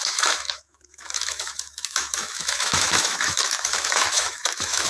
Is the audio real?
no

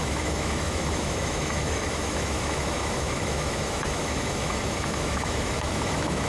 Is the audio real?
no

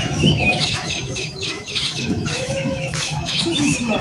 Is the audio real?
no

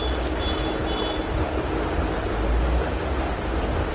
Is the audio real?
yes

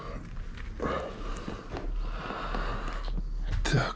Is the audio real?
yes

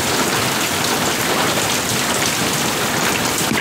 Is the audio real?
yes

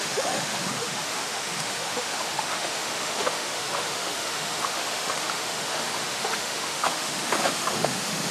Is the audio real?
no